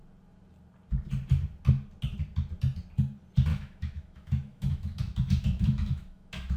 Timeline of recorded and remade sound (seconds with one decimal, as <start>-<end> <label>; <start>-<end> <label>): 0.0-3.5 recorded; 3.5-6.6 remade